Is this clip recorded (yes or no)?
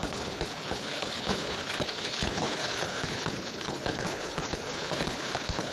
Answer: no